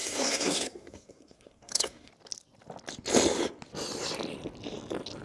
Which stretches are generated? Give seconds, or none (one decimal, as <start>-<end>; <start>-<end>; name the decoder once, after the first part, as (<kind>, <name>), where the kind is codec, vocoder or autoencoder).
0.0-2.1 (codec, SNAC)

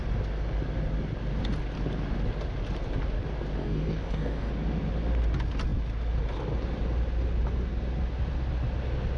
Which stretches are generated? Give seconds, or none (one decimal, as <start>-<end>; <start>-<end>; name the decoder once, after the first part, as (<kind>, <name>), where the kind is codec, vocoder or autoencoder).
3.6-4.5 (codec, DAC)

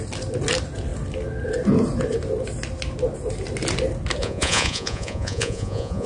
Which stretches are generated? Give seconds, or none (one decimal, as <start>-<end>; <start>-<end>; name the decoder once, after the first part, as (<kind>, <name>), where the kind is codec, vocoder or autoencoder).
4.2-6.1 (vocoder, Vocos)